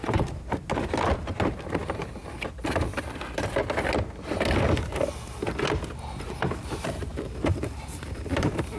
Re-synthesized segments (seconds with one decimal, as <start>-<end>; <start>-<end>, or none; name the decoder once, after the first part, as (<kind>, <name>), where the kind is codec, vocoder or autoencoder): 0.0-0.7 (vocoder, BigVGAN v2); 7.1-8.8